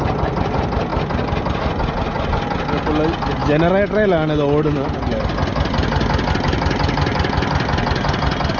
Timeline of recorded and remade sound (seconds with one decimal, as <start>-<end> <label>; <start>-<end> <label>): 0.0-8.6 recorded